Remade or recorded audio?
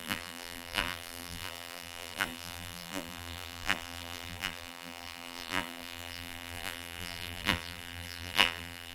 remade